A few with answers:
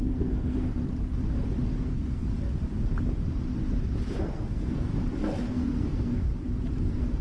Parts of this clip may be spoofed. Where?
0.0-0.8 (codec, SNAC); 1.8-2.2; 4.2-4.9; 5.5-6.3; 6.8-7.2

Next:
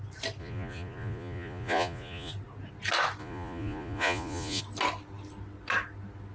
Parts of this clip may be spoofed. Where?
0.4-2.3 (vocoder, Vocos); 3.2-4.6

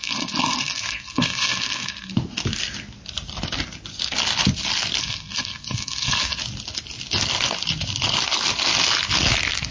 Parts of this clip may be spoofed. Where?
0.0-2.1 (codec, SNAC); 5.0-6.4

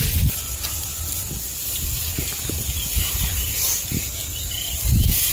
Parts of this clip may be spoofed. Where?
0.0-0.9 (vocoder, BigVGAN v2); 1.4-5.3